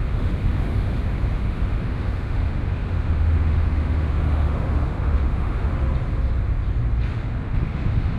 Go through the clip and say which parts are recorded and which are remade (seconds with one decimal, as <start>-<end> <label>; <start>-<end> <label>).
0.0-5.7 remade; 5.7-7.1 recorded; 7.1-8.2 remade